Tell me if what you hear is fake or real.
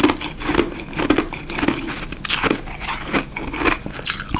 real